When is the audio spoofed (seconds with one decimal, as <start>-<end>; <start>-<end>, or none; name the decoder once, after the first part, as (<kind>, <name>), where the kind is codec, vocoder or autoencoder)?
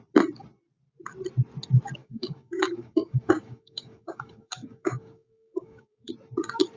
2.0-6.1 (codec, DAC)